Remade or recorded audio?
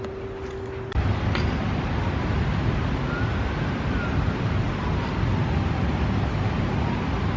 recorded